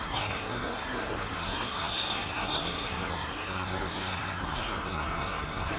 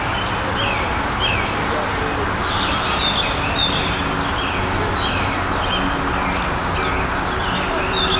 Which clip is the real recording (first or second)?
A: second